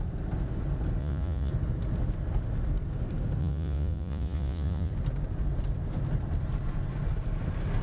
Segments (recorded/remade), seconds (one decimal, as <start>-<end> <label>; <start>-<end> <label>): 0.0-1.0 recorded; 1.0-1.5 remade; 1.5-3.4 recorded; 3.4-4.9 remade; 4.9-7.8 recorded